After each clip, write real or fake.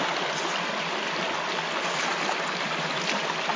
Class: real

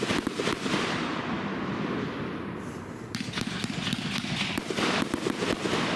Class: real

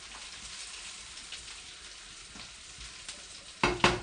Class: real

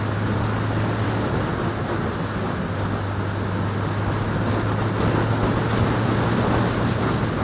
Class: real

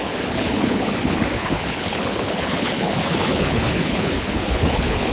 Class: fake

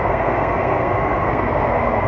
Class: fake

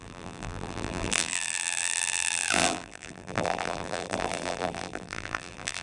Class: fake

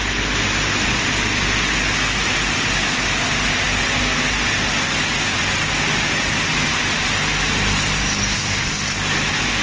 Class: real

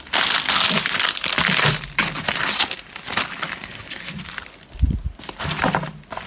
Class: real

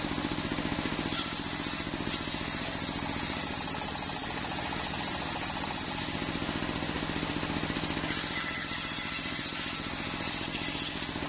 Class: real